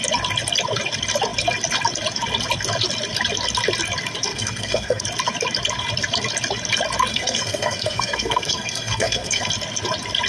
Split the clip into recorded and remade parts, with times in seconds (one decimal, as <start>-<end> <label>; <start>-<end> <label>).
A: 0.0-4.3 recorded; 4.3-5.0 remade; 5.0-7.1 recorded; 7.1-9.5 remade; 9.5-10.3 recorded